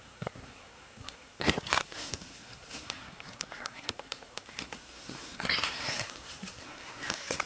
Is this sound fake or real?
fake